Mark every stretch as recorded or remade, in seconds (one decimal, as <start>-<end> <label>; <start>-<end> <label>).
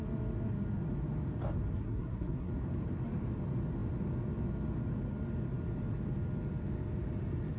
0.0-1.7 recorded; 1.7-2.5 remade; 2.5-7.6 recorded